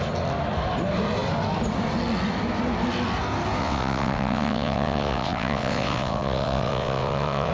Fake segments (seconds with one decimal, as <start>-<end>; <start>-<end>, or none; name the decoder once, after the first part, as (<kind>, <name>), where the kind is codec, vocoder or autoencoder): 3.6-7.5 (vocoder, WaveNeXt)